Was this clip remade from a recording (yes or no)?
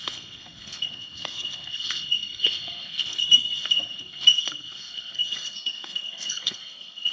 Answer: yes